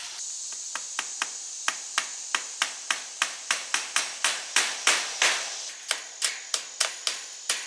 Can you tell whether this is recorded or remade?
recorded